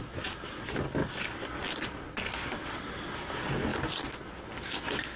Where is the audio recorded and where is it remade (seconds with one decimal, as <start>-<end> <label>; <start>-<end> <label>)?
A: 0.0-5.2 recorded